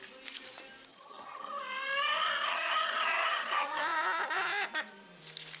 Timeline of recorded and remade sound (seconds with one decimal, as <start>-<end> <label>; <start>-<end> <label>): 0.0-0.9 recorded; 0.9-1.5 remade; 1.5-2.5 recorded; 2.5-3.8 remade; 3.8-5.6 recorded